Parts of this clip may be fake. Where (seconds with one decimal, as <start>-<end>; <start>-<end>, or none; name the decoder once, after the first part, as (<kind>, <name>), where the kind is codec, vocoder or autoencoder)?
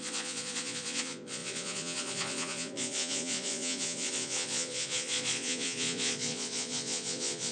0.0-7.5 (vocoder, Vocos)